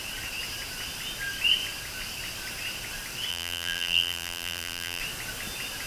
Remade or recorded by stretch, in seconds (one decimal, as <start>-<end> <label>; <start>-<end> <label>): 0.0-3.3 recorded; 3.3-5.0 remade; 5.0-5.9 recorded

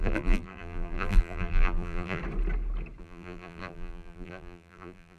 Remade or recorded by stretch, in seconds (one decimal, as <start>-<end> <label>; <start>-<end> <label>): 0.0-2.2 remade; 2.2-3.0 recorded; 3.0-5.2 remade

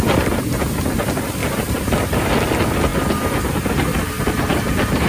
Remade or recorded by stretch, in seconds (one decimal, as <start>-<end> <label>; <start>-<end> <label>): 0.0-1.4 recorded; 1.4-2.5 remade; 2.5-5.1 recorded

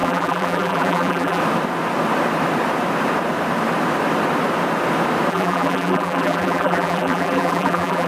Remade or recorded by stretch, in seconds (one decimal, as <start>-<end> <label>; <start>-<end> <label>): 0.0-1.4 remade; 1.4-5.3 recorded; 5.3-8.1 remade

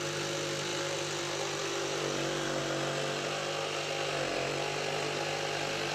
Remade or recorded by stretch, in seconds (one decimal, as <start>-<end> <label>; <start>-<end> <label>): 0.0-1.6 recorded; 1.6-2.6 remade; 2.6-5.9 recorded